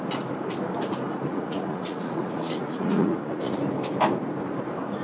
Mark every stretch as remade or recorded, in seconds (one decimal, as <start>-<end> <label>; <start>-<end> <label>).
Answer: 0.0-1.3 recorded; 1.3-3.6 remade; 3.6-5.0 recorded

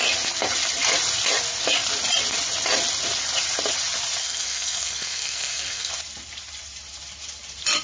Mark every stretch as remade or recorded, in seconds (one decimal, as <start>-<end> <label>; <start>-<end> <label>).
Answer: 0.0-4.2 recorded; 4.2-5.9 remade; 5.9-7.8 recorded

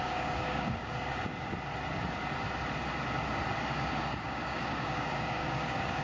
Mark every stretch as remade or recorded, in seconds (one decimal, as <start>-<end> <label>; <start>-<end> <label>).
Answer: 0.0-1.2 remade; 1.2-4.0 recorded; 4.0-6.0 remade

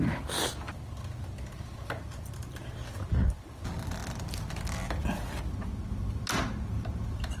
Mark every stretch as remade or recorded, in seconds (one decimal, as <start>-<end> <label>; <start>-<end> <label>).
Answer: 0.0-7.4 recorded

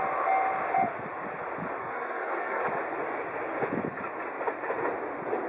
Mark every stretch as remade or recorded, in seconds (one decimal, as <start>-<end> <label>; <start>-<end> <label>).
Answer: 0.0-1.8 recorded; 1.8-2.6 remade; 2.6-5.5 recorded

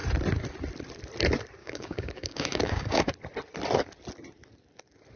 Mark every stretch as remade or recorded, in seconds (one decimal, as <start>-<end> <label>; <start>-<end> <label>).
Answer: 0.0-1.6 recorded; 1.6-3.1 remade; 3.1-5.2 recorded

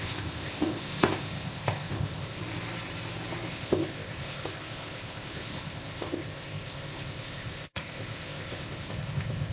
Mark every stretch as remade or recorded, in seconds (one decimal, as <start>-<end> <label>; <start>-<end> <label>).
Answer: 0.0-2.4 remade; 2.4-3.5 recorded; 3.5-9.5 remade